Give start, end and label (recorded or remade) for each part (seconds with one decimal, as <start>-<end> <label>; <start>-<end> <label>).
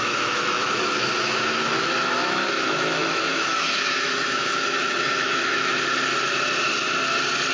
0.0-5.7 remade; 5.7-7.5 recorded